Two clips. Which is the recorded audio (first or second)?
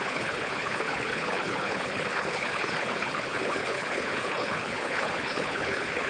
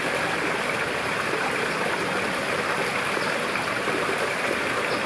second